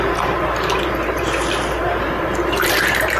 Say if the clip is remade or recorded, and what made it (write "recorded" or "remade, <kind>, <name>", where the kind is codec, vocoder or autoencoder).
remade, vocoder, BigVGAN v2